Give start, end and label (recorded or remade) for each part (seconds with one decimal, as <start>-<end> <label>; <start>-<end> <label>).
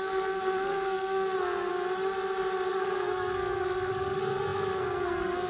0.0-1.7 remade; 1.7-2.7 recorded; 2.7-5.5 remade